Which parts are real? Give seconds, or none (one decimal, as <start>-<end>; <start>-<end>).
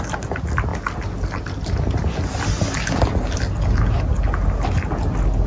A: 0.0-5.5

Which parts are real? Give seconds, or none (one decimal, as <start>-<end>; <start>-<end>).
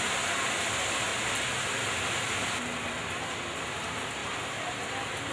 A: 0.0-5.3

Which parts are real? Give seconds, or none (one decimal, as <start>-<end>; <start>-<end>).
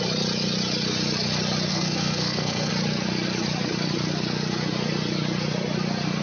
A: 0.0-1.7; 2.7-6.2